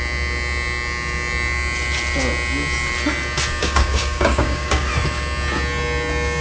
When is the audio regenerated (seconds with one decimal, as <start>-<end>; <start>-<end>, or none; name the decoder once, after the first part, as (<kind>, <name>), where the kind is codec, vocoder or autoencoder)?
3.6-4.9 (codec, DAC)